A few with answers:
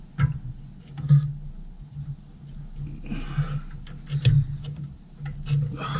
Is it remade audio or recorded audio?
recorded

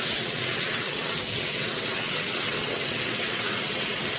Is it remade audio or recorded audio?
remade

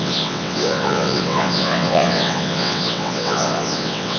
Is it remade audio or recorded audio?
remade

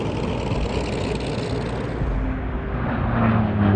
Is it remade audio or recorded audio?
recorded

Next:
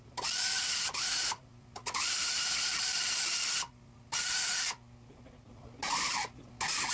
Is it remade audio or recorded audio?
recorded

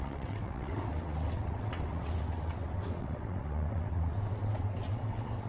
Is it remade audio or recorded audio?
remade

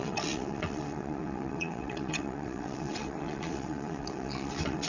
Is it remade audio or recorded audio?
remade